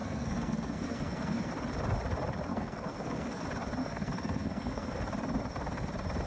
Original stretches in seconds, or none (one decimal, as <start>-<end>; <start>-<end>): 1.5-2.5; 3.4-3.8; 4.9-6.3